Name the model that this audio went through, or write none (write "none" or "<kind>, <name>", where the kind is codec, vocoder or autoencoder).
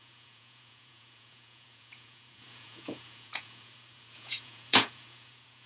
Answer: vocoder, Vocos